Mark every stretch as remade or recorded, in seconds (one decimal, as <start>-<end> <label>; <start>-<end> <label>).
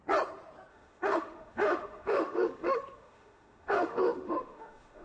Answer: 0.0-0.7 recorded; 0.7-5.0 remade